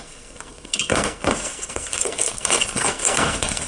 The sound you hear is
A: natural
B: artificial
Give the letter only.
B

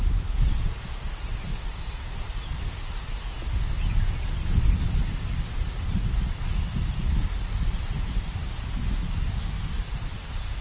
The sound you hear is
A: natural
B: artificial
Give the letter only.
A